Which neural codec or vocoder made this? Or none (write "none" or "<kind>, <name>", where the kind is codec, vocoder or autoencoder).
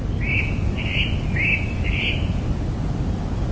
none